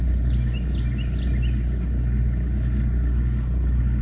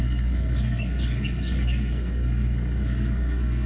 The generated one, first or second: second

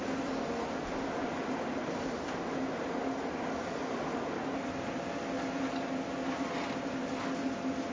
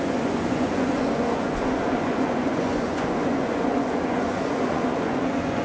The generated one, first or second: second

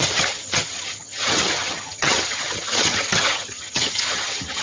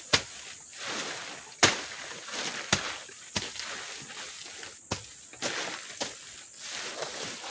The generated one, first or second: first